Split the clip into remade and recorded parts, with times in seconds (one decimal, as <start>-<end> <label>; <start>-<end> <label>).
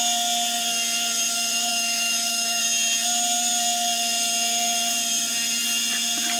0.0-1.7 recorded; 1.7-2.6 remade; 2.6-6.4 recorded